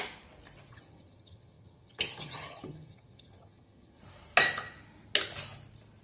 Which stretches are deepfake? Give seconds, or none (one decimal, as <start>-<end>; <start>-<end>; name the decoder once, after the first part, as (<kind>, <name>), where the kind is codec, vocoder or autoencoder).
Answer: 0.7-4.0 (vocoder, HiFi-GAN)